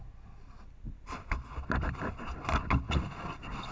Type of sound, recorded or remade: recorded